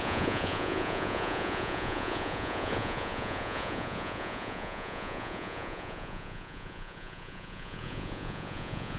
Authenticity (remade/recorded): remade